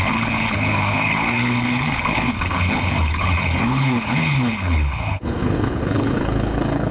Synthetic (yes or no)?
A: yes